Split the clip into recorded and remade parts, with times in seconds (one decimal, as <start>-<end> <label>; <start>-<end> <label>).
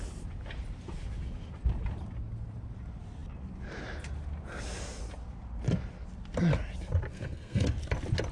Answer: 0.0-7.1 recorded; 7.1-7.7 remade; 7.7-8.3 recorded